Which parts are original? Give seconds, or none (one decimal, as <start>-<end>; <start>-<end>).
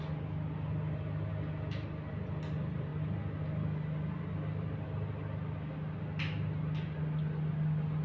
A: 0.0-8.0